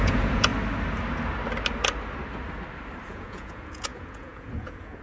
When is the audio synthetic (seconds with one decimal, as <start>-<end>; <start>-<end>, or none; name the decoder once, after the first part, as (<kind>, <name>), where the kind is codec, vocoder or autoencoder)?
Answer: 0.0-0.5 (vocoder, Vocos); 3.1-5.0